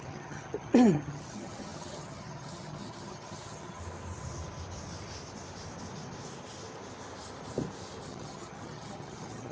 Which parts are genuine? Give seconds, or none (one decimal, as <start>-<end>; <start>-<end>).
3.8-8.0